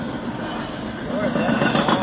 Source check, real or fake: real